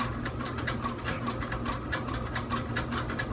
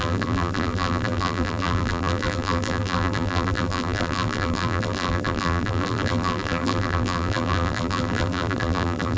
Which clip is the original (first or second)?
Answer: first